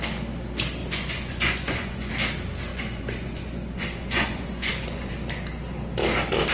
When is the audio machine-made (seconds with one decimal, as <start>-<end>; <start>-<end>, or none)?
0.8-2.1; 2.7-5.1